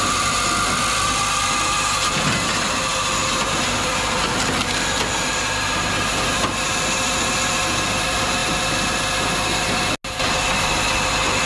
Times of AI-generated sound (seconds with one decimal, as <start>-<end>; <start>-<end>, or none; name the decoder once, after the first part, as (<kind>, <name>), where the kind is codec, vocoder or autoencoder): none